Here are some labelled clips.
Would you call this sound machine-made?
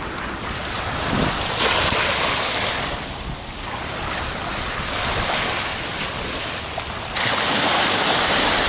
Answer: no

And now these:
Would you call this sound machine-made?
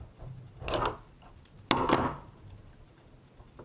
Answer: no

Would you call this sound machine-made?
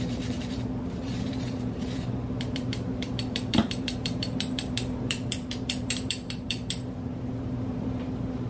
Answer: yes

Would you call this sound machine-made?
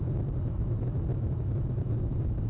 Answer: yes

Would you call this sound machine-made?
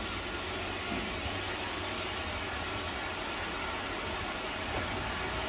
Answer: no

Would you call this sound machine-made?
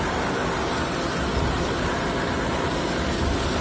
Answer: no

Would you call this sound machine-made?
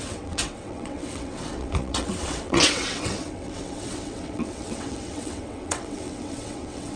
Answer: yes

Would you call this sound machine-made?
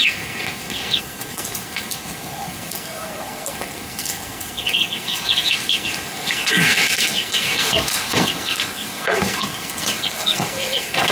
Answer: yes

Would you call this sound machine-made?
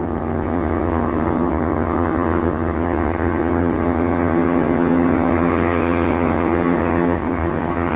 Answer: yes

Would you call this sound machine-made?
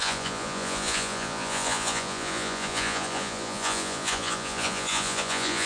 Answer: yes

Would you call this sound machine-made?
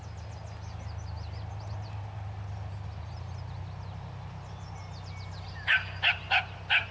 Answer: no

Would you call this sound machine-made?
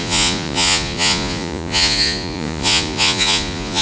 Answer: yes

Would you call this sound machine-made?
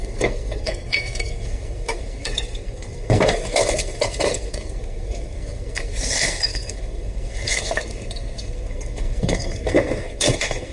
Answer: yes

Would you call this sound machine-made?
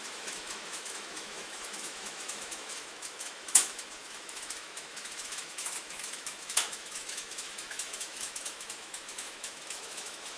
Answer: yes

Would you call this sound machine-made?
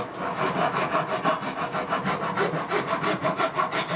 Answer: no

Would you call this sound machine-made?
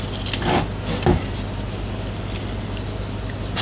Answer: no